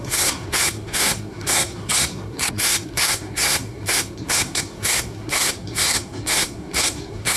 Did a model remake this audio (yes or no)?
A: yes